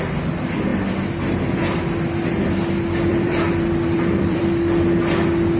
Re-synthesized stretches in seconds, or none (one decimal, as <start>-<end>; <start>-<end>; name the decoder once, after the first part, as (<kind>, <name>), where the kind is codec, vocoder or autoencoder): 3.1-4.4 (vocoder, BigVGAN v2)